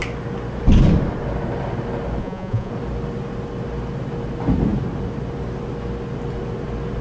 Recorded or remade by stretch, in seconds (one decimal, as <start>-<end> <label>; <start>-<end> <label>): 0.0-2.2 recorded; 2.2-2.7 remade; 2.7-7.0 recorded